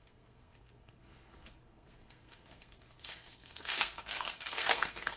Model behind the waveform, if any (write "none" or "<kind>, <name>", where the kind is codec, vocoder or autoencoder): codec, SNAC